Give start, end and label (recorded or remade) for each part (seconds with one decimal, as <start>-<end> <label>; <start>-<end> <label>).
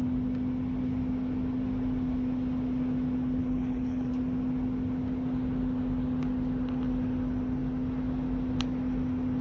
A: 0.0-3.4 recorded; 3.4-4.1 remade; 4.1-9.4 recorded